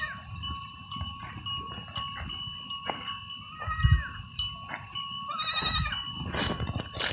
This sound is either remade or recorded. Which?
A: recorded